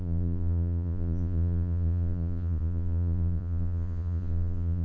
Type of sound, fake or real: fake